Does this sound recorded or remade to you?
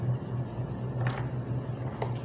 recorded